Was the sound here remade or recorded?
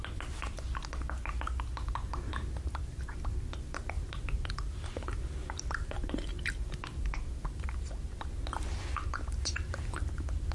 recorded